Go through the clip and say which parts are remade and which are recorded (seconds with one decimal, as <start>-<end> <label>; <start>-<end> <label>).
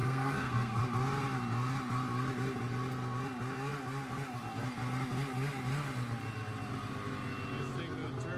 0.0-0.8 remade; 0.8-8.4 recorded